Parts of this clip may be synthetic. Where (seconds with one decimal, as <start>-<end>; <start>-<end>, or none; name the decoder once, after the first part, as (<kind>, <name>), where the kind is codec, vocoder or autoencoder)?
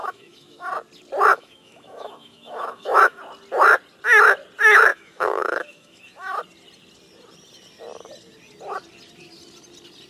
0.0-0.7 (autoencoder, DAC-VAE); 1.3-3.2; 4.9-6.4